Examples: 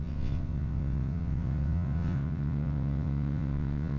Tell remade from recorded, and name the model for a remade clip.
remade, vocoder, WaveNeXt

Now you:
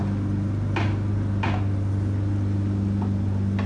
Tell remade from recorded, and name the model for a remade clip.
recorded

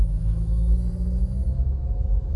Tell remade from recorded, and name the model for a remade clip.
remade, autoencoder, DAC-VAE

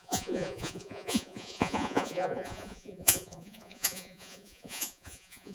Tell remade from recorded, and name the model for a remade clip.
remade, vocoder, Vocos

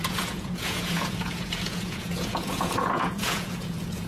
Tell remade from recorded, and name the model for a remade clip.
remade, vocoder, Vocos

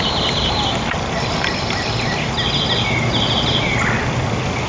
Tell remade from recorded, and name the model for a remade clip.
recorded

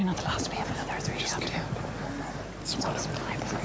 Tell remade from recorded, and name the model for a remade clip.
recorded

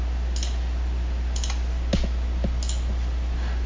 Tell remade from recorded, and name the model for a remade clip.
recorded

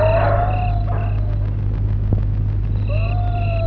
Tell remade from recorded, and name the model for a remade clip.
recorded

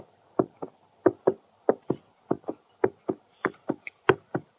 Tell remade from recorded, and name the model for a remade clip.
recorded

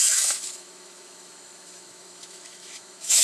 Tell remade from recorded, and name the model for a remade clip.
remade, autoencoder, DAC-VAE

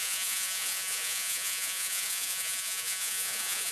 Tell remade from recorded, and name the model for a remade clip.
remade, vocoder, Vocos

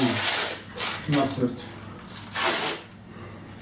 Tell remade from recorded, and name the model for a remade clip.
recorded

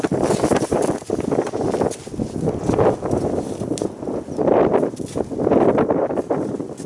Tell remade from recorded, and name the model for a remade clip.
recorded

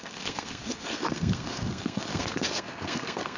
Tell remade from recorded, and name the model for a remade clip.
remade, codec, SNAC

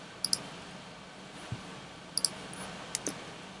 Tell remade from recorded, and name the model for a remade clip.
recorded